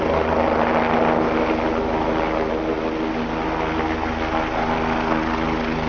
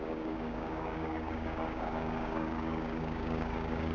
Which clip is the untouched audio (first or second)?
first